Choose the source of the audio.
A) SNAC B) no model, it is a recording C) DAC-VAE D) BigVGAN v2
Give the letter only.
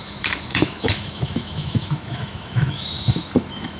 C